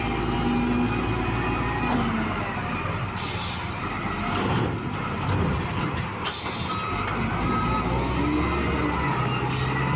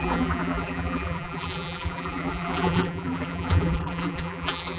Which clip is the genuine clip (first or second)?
first